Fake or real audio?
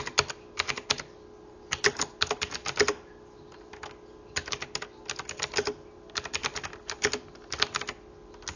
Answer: real